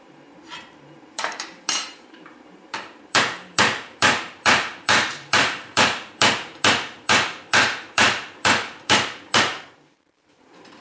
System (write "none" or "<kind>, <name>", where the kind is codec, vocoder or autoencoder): vocoder, BigVGAN v2